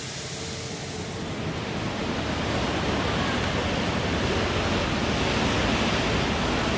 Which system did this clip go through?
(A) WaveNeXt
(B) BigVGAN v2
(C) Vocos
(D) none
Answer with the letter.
D